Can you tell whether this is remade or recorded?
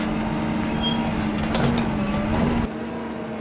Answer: recorded